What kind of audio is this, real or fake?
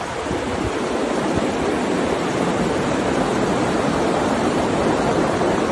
real